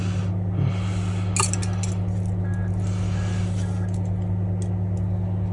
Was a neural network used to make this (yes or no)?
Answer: no